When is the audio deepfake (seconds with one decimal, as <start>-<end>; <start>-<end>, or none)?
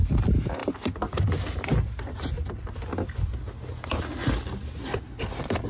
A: none